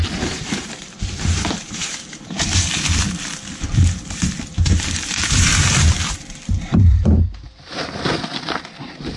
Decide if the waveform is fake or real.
fake